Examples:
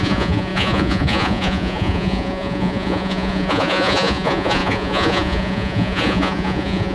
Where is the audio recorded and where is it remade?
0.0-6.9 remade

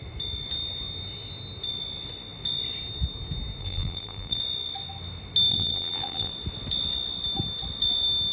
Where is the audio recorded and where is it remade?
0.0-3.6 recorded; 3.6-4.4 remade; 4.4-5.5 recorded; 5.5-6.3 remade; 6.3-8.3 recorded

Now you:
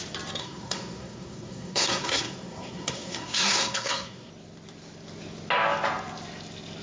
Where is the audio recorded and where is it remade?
0.0-0.4 recorded; 0.4-4.3 remade; 4.3-6.8 recorded

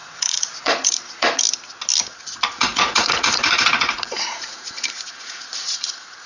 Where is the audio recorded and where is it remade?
0.0-1.4 remade; 1.4-2.1 recorded; 2.1-6.3 remade

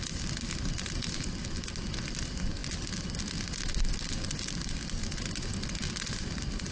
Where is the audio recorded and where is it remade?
0.0-6.7 recorded

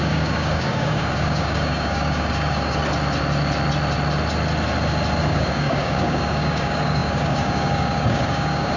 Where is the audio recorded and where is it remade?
0.0-2.8 remade; 2.8-5.2 recorded; 5.2-8.8 remade